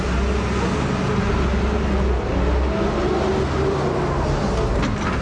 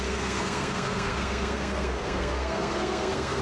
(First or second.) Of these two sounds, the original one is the first